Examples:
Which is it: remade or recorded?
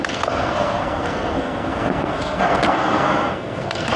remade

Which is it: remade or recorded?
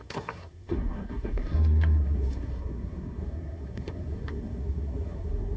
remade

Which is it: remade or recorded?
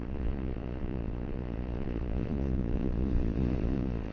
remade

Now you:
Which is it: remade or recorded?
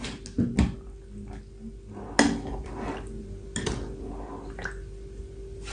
recorded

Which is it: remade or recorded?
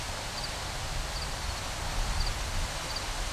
recorded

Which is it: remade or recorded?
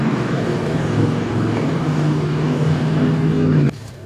remade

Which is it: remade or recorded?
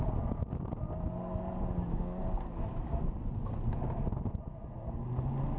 recorded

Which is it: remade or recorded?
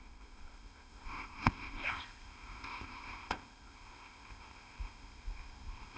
remade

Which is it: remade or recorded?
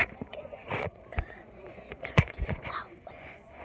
remade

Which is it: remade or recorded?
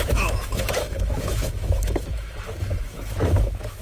remade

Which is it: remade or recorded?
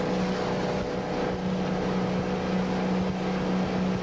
recorded